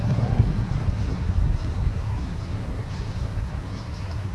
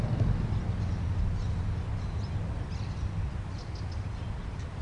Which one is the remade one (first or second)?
first